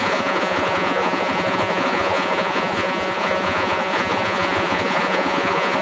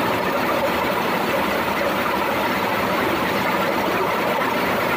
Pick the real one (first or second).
second